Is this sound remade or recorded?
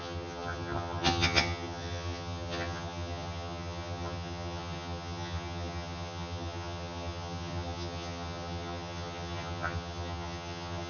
remade